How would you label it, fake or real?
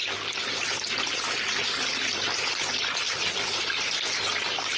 real